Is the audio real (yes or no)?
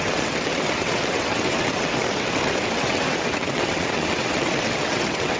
no